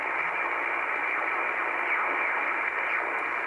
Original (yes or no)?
yes